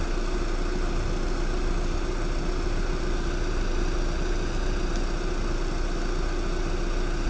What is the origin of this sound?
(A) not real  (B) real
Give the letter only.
B